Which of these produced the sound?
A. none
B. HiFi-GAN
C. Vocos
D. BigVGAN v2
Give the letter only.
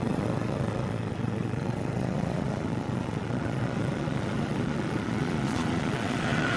C